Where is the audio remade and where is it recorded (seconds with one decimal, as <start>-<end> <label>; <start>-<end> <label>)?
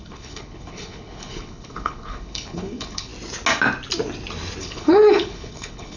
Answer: 0.0-3.1 remade; 3.1-4.6 recorded; 4.6-6.0 remade